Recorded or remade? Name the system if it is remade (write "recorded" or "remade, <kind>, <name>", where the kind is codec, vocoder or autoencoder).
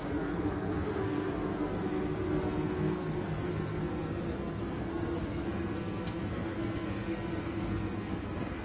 remade, codec, SNAC